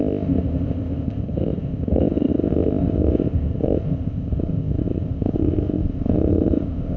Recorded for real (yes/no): no